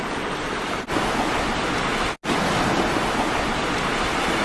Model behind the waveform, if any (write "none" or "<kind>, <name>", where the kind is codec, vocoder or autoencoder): none